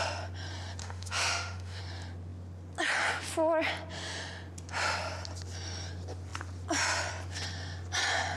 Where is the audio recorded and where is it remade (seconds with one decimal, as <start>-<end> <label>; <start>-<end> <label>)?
0.0-0.8 recorded; 0.8-1.8 remade; 1.8-8.4 recorded